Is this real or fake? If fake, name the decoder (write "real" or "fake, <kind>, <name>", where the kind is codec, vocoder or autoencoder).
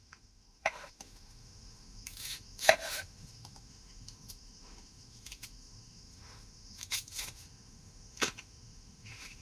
fake, autoencoder, DAC-VAE